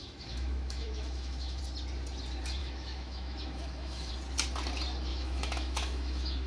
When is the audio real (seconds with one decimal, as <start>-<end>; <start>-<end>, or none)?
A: 1.6-2.6; 4.1-5.1